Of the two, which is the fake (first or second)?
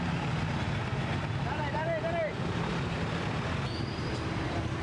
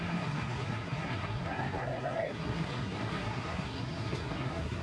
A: second